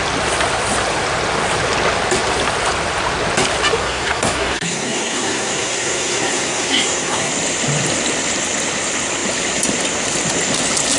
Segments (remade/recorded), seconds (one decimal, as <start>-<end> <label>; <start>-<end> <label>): 0.0-3.8 recorded; 3.8-7.3 remade; 7.3-11.0 recorded